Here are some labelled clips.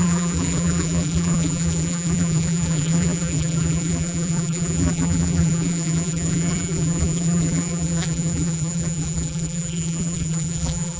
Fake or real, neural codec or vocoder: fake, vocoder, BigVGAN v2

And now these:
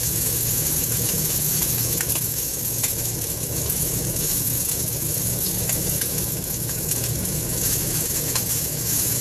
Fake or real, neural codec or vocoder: fake, autoencoder, DAC-VAE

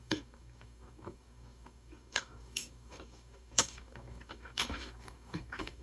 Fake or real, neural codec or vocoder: fake, codec, DAC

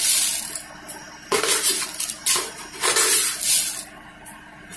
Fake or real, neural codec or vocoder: real